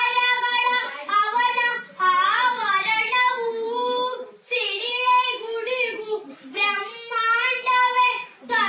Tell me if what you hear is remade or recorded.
remade